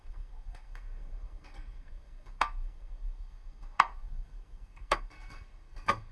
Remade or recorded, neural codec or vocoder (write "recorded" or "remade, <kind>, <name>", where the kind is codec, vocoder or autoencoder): remade, codec, SNAC